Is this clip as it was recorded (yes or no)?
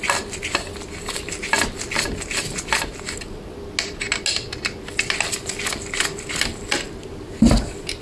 yes